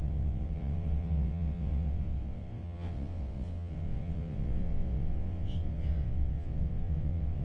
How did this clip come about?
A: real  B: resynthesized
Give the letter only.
B